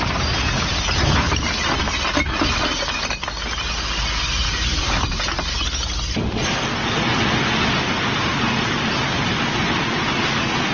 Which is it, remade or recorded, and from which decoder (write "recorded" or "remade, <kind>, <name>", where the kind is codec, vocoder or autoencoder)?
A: recorded